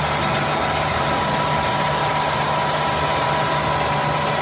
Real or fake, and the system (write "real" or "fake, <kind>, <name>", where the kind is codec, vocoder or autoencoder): real